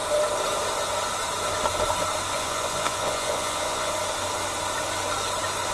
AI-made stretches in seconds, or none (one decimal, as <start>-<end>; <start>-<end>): 2.3-3.9